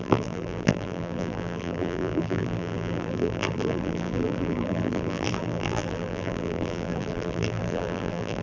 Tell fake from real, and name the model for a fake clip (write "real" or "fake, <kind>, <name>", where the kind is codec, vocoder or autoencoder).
fake, vocoder, BigVGAN v2